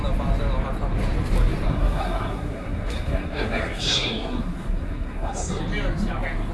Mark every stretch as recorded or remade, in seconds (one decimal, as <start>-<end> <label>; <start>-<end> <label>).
0.0-1.7 recorded; 1.7-5.6 remade; 5.6-6.5 recorded